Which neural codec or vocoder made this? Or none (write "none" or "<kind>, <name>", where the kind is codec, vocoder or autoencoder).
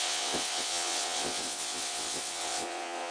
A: vocoder, WaveNeXt